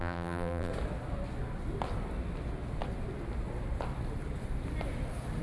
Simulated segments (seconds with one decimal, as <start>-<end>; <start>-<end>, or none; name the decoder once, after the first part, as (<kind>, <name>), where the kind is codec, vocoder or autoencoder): 0.0-0.7 (vocoder, BigVGAN v2)